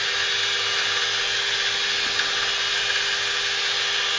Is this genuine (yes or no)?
yes